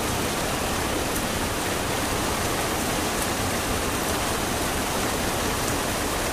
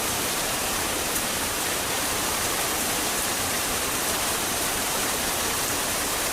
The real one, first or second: first